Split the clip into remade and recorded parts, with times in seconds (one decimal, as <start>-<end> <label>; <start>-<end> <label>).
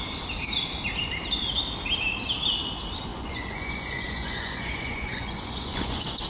0.0-3.1 recorded; 3.1-6.3 remade